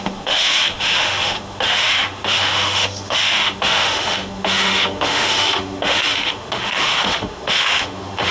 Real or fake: fake